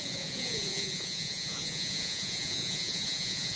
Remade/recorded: remade